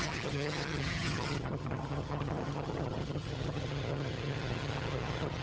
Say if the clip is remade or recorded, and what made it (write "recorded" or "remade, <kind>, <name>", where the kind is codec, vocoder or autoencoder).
remade, vocoder, HiFi-GAN